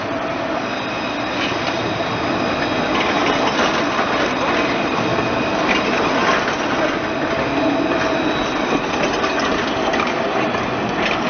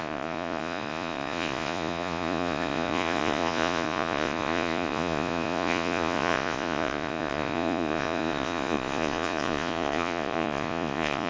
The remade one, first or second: second